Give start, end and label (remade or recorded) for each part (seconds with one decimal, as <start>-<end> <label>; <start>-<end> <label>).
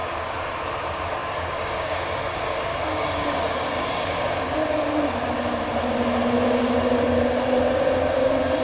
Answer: 0.0-1.2 recorded; 1.2-4.4 remade; 4.4-8.6 recorded